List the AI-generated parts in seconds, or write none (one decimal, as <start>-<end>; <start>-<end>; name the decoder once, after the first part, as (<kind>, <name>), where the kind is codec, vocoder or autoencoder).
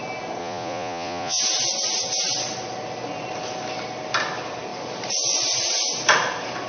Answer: 0.4-1.4 (vocoder, Vocos)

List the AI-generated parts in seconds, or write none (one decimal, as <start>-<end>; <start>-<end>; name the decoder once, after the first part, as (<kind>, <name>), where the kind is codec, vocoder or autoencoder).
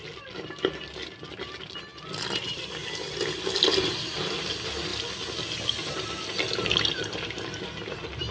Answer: none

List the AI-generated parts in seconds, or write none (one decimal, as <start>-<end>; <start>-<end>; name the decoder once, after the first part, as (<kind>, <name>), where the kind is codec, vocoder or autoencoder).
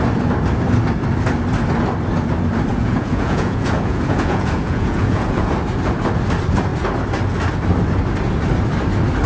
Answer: 2.7-5.5 (vocoder, Vocos)